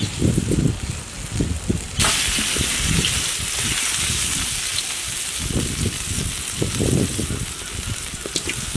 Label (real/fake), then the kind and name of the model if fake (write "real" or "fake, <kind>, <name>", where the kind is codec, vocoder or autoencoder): real